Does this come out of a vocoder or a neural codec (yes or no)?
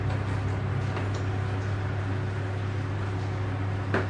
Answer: no